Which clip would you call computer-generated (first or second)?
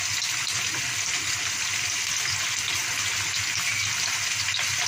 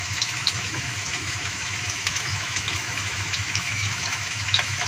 second